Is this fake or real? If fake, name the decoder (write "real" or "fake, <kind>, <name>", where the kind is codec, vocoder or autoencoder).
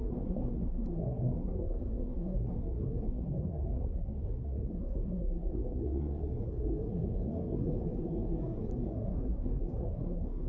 fake, codec, SNAC